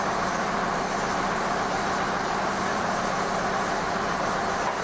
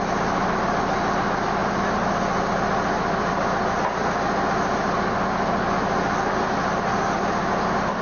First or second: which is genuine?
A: second